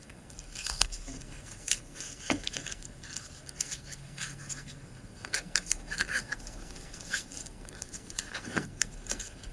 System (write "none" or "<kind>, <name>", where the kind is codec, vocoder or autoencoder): codec, SNAC